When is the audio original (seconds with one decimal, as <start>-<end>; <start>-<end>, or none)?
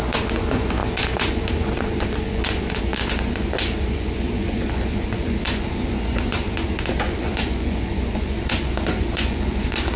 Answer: none